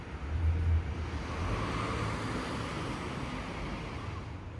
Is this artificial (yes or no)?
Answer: no